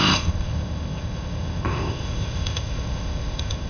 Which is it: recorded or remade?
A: remade